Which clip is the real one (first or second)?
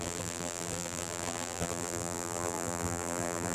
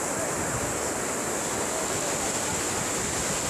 second